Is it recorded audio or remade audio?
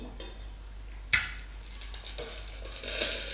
recorded